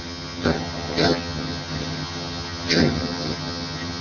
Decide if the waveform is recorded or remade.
remade